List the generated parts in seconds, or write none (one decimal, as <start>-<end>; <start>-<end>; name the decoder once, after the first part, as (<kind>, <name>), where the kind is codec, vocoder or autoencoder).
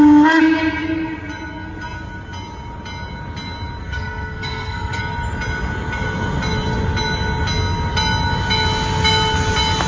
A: 3.8-5.0 (codec, SNAC)